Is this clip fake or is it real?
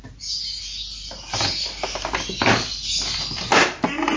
real